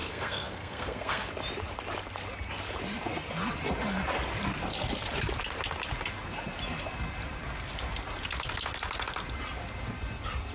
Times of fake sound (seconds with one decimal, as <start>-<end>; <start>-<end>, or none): 0.0-1.3